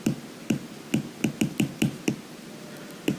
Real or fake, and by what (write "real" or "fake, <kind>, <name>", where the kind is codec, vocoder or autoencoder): real